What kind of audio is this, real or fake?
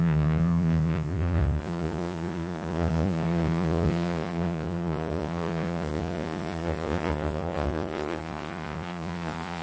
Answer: fake